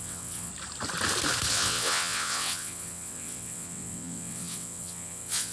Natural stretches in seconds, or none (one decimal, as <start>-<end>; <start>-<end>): 0.5-1.5